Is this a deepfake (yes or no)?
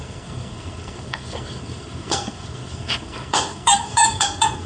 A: yes